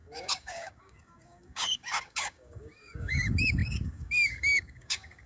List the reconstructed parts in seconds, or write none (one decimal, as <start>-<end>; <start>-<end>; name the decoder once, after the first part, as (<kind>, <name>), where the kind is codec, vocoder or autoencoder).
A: 0.0-5.3 (codec, DAC)